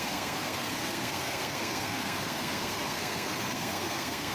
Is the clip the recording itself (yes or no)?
no